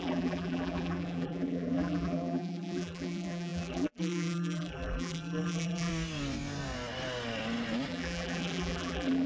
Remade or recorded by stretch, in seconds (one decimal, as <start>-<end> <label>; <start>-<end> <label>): 0.0-5.9 remade; 5.9-7.9 recorded; 7.9-9.3 remade